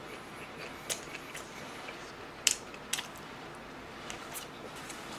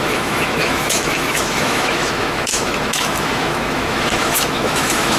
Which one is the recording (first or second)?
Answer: first